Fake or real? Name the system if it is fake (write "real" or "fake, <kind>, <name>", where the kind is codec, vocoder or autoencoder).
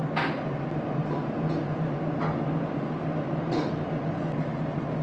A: real